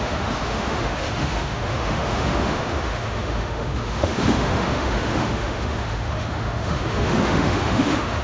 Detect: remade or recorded remade